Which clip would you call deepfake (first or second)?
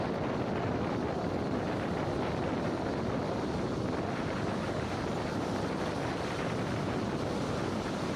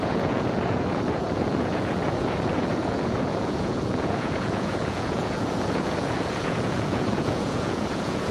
second